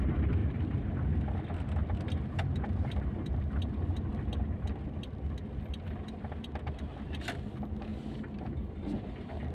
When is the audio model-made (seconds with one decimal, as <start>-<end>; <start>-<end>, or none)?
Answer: 0.4-0.9; 7.9-9.5